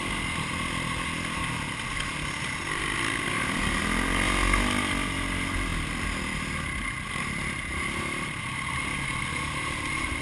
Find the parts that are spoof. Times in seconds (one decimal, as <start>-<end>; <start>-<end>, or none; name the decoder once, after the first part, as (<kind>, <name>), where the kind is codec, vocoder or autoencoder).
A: none